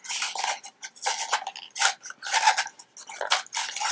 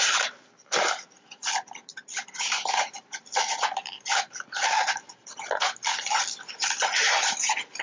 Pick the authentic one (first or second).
first